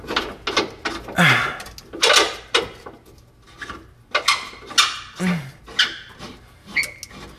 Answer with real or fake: real